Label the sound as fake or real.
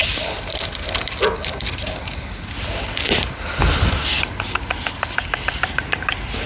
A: real